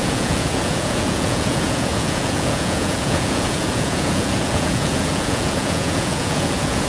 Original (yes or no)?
no